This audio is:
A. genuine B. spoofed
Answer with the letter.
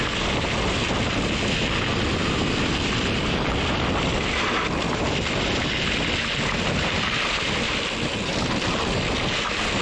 A